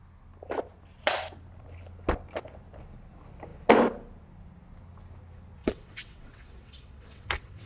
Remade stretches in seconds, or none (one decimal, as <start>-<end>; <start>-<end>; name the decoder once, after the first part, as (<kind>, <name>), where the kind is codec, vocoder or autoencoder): 5.6-7.7 (vocoder, WaveNeXt)